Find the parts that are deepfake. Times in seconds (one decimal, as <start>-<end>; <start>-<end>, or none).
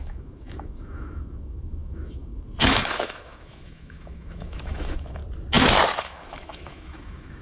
0.0-5.2; 6.0-7.4